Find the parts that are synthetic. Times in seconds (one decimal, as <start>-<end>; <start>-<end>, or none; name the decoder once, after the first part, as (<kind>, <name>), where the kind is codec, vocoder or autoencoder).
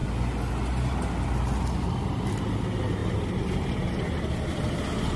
none